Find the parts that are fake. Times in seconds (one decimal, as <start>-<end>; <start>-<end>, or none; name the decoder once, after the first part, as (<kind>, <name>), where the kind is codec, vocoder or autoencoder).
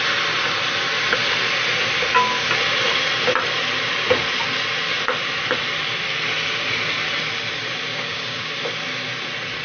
7.9-8.6 (codec, DAC)